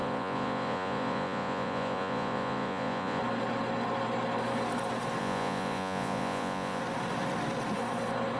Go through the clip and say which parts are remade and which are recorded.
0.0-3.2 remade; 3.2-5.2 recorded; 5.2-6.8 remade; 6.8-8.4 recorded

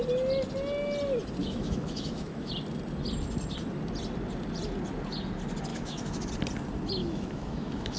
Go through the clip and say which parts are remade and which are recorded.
0.0-1.4 recorded; 1.4-2.5 remade; 2.5-5.7 recorded; 5.7-6.3 remade; 6.3-7.0 recorded; 7.0-8.0 remade

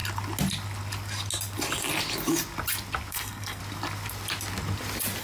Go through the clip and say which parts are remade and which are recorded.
0.0-3.1 recorded; 3.1-3.6 remade; 3.6-5.2 recorded

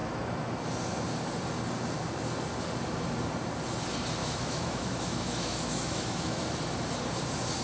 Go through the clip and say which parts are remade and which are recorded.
0.0-4.2 recorded; 4.2-6.4 remade; 6.4-7.6 recorded

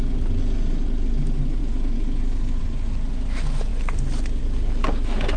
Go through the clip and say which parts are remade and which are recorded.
0.0-5.4 recorded

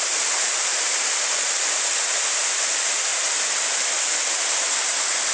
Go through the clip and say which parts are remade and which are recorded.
0.0-0.7 recorded; 0.7-1.8 remade; 1.8-3.1 recorded; 3.1-3.9 remade; 3.9-5.3 recorded